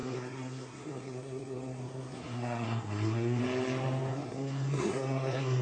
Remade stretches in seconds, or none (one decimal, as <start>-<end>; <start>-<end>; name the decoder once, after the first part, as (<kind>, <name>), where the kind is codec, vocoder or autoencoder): 0.0-3.4 (codec, SNAC); 4.1-5.6